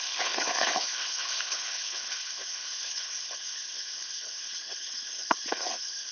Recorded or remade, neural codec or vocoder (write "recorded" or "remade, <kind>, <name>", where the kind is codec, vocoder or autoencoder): remade, codec, HILCodec